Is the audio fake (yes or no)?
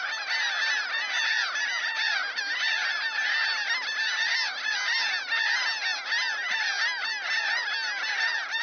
no